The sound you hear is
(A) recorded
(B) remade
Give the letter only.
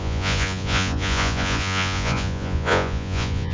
B